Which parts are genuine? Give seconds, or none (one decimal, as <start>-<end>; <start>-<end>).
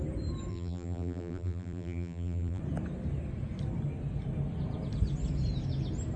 0.0-0.5; 2.6-6.2